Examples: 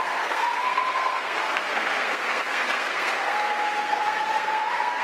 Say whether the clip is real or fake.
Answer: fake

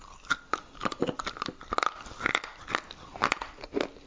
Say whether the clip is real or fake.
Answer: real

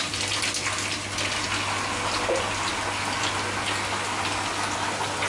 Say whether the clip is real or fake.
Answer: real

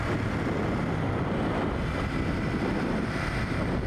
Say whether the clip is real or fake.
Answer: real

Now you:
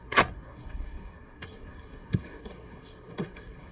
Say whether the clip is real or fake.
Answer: fake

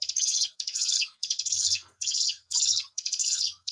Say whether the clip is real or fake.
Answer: fake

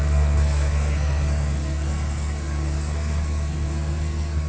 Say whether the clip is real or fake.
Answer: fake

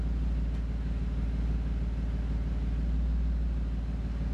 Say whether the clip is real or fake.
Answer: real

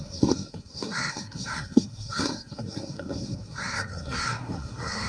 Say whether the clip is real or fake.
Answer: fake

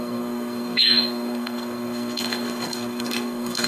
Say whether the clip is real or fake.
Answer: fake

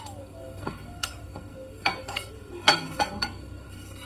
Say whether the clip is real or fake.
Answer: fake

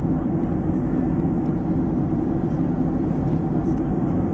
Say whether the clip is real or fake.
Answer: real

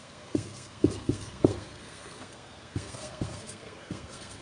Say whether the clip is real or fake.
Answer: fake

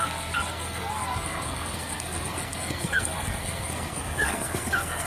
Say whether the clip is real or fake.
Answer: fake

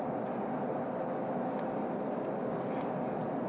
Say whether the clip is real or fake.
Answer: real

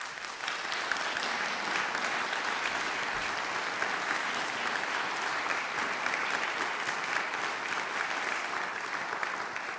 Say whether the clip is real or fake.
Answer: real